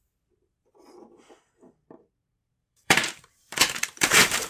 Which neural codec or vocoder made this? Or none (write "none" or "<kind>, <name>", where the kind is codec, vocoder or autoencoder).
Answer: vocoder, BigVGAN v2